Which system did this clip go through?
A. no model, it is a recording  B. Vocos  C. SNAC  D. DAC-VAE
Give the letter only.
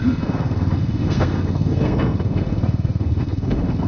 C